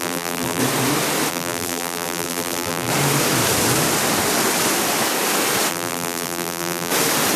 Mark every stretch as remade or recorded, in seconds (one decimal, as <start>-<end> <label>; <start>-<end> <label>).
0.0-0.6 remade; 0.6-1.3 recorded; 1.3-2.9 remade; 2.9-5.7 recorded; 5.7-6.9 remade; 6.9-7.4 recorded